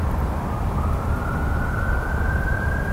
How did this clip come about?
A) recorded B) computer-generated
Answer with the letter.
B